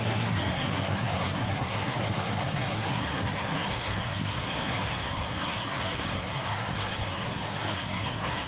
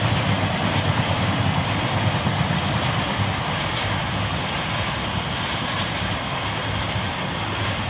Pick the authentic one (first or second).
second